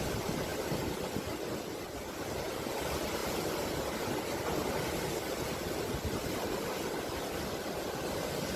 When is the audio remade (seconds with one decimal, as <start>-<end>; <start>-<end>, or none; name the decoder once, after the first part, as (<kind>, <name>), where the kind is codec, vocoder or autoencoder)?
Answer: none